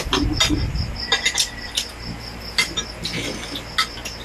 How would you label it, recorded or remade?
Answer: recorded